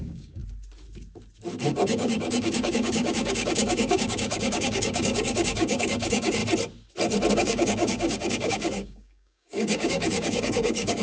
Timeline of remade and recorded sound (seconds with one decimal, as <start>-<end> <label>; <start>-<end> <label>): 0.0-0.4 remade; 0.4-1.7 recorded; 1.7-6.4 remade; 6.4-7.3 recorded; 7.3-11.0 remade